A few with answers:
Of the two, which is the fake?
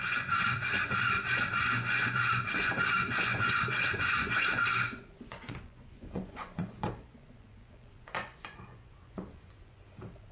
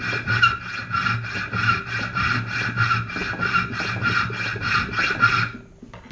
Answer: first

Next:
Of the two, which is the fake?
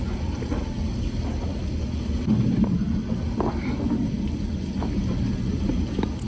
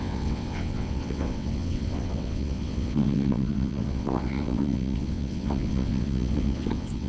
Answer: second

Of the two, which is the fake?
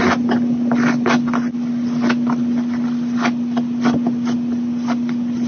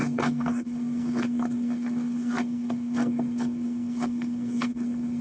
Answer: second